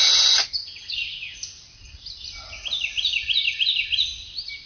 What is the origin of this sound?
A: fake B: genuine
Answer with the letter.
B